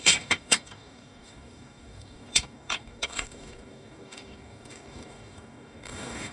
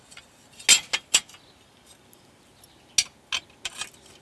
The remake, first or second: first